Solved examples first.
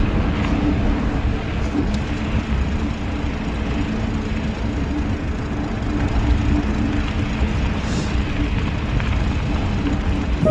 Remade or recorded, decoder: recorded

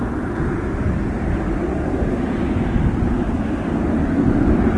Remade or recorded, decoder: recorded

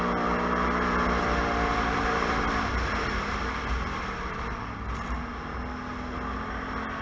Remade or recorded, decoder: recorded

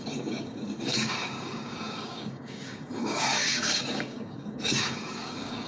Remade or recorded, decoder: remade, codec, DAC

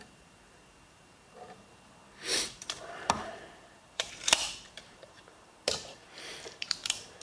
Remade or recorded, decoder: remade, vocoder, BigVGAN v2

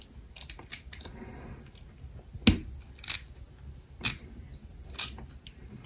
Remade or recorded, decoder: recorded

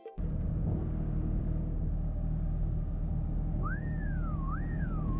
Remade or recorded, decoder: remade, codec, DAC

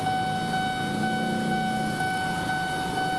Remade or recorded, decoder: recorded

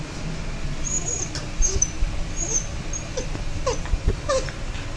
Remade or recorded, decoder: recorded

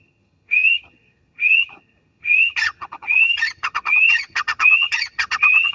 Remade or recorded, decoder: remade, vocoder, HiFi-GAN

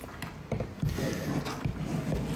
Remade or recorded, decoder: recorded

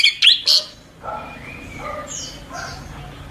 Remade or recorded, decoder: recorded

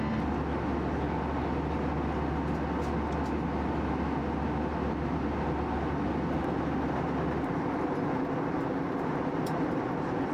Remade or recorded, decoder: recorded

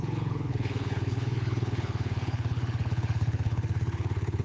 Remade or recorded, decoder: remade, codec, HILCodec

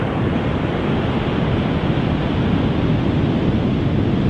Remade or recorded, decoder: recorded